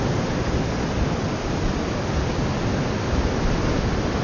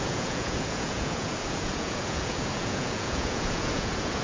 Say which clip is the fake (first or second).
second